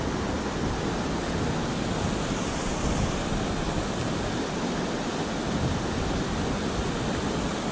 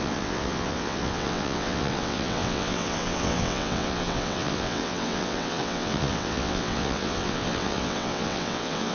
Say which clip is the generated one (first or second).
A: second